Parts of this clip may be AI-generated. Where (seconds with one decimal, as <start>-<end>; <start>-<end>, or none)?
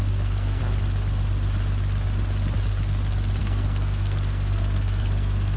0.0-0.6; 3.4-5.6